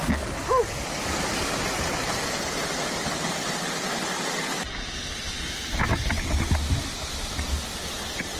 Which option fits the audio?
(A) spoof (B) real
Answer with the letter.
B